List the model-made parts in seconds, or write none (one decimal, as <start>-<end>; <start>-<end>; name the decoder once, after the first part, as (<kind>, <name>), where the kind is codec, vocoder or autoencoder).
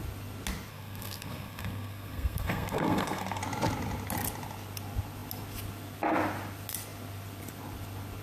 0.7-3.4 (codec, SNAC)